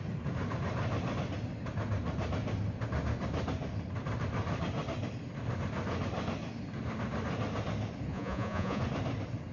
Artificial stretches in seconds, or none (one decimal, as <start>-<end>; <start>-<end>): 8.1-8.8